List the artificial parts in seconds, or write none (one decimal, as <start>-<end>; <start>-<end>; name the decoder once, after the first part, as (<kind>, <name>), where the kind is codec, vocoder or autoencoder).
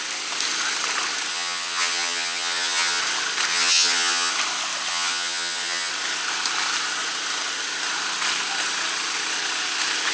1.3-3.0 (vocoder, HiFi-GAN); 3.5-4.3; 4.9-5.9